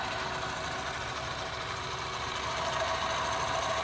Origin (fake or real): fake